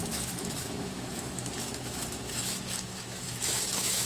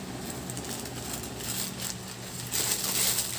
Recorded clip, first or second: second